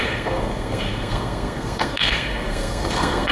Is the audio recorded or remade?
remade